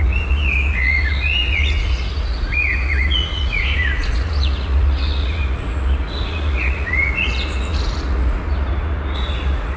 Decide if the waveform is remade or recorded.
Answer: remade